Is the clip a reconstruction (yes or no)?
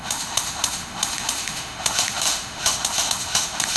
yes